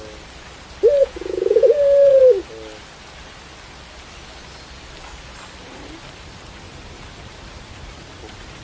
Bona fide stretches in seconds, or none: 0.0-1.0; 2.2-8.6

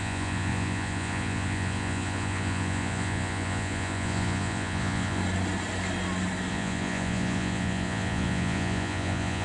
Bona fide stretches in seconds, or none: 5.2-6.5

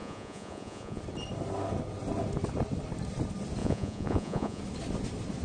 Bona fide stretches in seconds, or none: 1.0-3.6; 4.6-5.4